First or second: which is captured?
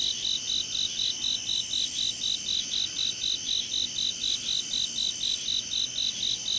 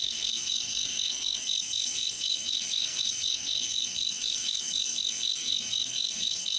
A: first